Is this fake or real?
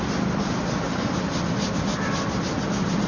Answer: fake